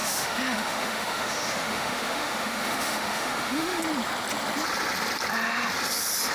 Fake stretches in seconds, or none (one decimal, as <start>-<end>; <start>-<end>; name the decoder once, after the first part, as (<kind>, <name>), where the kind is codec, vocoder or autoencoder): 0.0-3.8 (autoencoder, DAC-VAE)